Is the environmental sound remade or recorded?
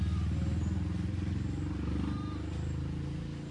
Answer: recorded